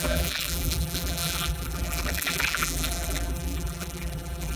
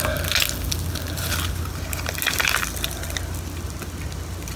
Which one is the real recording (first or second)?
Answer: second